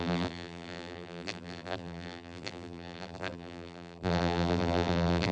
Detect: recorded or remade remade